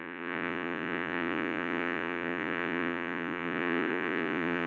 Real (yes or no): no